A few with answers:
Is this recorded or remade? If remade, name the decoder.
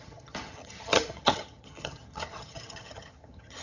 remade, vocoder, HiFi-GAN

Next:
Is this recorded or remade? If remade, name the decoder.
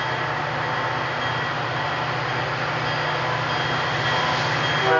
recorded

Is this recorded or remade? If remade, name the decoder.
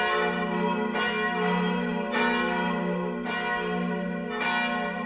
recorded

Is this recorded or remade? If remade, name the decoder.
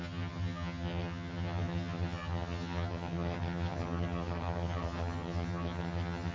remade, vocoder, HiFi-GAN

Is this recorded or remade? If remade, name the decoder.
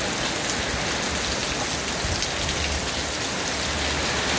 recorded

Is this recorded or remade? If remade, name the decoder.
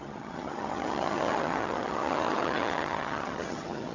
remade, vocoder, HiFi-GAN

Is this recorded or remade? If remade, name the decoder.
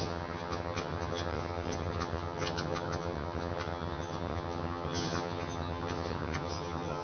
remade, vocoder, HiFi-GAN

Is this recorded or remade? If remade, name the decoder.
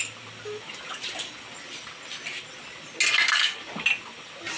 recorded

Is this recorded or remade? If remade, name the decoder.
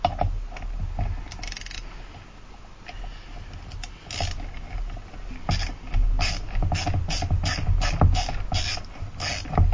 recorded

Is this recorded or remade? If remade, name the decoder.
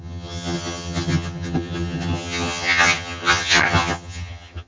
remade, vocoder, HiFi-GAN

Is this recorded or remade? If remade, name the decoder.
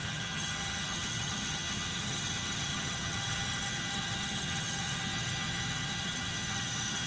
remade, vocoder, HiFi-GAN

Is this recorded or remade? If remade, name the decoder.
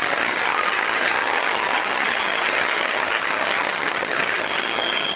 remade, vocoder, HiFi-GAN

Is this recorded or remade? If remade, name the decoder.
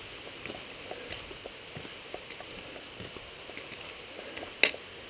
recorded